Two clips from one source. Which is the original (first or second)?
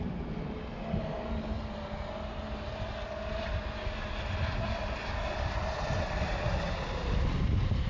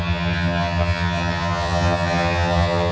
first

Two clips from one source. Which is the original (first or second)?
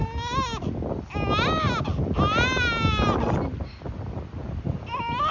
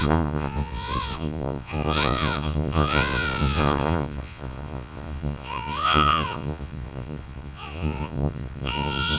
first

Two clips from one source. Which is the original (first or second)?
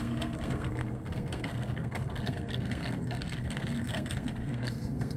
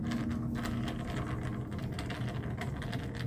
second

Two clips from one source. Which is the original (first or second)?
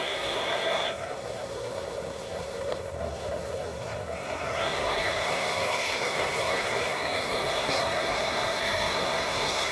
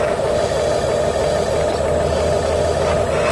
second